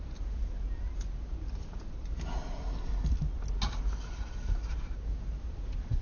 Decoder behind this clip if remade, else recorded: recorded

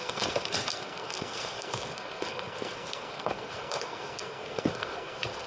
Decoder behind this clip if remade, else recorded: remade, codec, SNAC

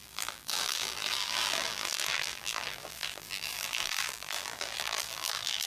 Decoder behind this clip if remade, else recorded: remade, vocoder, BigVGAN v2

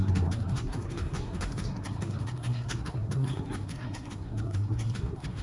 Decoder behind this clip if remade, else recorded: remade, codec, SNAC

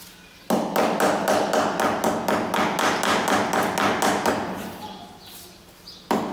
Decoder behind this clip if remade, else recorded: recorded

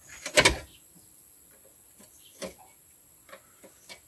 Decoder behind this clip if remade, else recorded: recorded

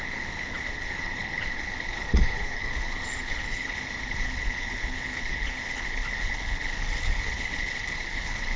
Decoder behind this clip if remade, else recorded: remade, codec, HILCodec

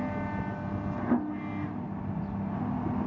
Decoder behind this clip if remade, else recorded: recorded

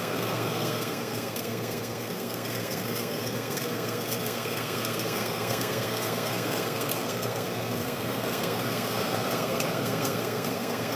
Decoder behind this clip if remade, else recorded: remade, codec, SNAC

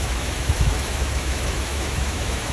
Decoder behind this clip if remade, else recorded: remade, autoencoder, DAC-VAE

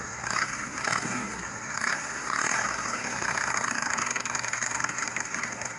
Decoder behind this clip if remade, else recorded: remade, codec, SNAC